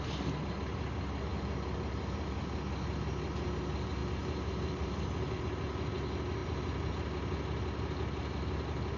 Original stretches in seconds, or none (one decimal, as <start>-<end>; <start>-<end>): 0.0-4.0; 5.4-6.4; 6.9-9.0